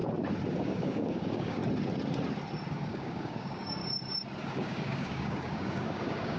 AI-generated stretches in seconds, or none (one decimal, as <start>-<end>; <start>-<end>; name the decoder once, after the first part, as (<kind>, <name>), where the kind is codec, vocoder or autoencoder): 0.5-1.6 (codec, DAC); 2.7-3.8; 4.5-6.4